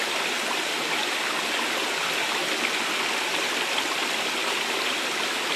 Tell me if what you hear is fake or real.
real